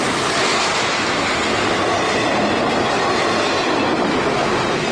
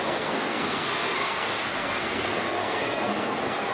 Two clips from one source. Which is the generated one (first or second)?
second